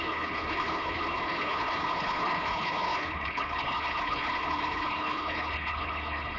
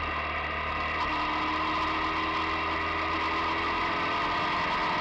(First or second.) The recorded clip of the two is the second